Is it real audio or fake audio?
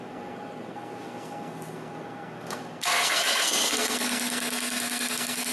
fake